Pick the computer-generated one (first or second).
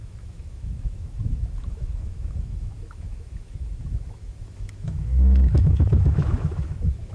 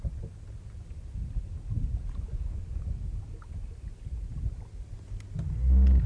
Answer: first